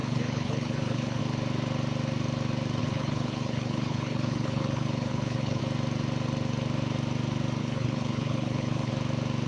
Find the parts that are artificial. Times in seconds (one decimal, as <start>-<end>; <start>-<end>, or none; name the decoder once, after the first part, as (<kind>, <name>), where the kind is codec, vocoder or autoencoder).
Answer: 0.0-1.2 (codec, HILCodec); 2.8-5.6; 7.6-8.9